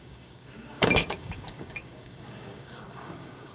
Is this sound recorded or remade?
remade